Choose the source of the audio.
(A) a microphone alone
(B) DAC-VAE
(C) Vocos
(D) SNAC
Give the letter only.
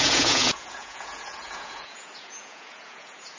C